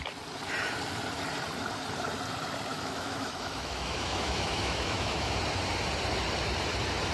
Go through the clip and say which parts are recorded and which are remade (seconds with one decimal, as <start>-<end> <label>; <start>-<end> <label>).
0.0-2.7 recorded; 2.7-5.4 remade; 5.4-7.1 recorded